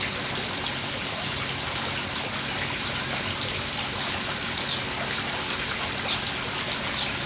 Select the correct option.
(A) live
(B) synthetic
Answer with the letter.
A